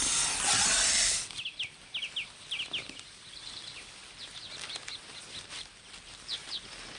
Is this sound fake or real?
real